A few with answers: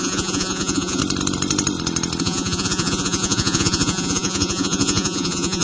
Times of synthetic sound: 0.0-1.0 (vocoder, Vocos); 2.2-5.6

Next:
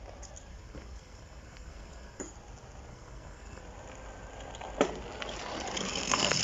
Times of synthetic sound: 0.5-2.2 (codec, SNAC); 2.9-3.6; 5.9-6.4

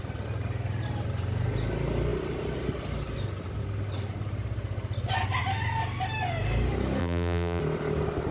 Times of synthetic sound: 7.0-7.6 (vocoder, BigVGAN v2)